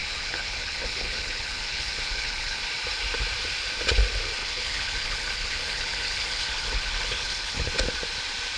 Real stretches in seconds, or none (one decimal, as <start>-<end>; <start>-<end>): 2.6-4.4; 7.7-8.6